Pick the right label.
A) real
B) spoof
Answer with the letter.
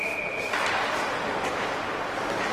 A